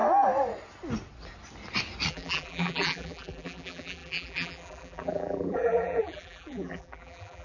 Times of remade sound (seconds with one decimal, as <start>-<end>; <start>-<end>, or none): 2.1-7.4